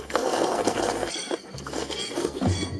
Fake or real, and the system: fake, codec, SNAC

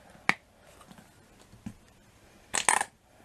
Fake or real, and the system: real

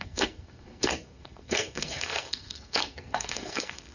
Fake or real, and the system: fake, codec, SNAC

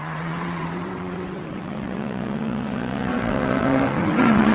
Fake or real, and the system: fake, vocoder, WaveNeXt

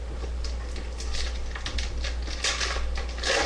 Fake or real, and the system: real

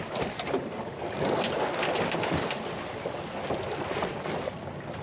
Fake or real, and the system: real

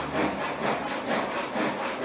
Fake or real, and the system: real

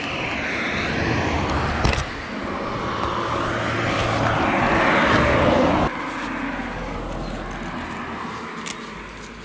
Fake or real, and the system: real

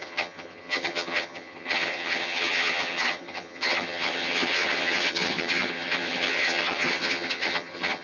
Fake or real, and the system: fake, vocoder, HiFi-GAN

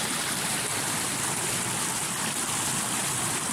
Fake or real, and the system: fake, vocoder, BigVGAN v2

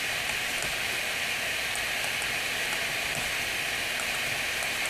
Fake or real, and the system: real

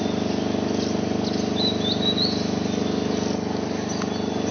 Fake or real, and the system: real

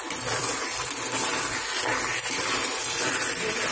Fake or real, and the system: real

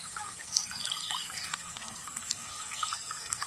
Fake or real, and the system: fake, codec, SNAC